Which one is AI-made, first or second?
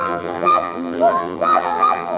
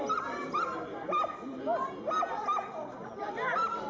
first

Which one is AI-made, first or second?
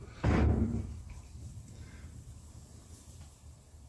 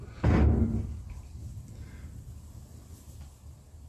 first